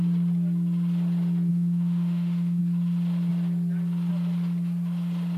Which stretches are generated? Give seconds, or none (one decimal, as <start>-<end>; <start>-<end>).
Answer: 1.5-2.6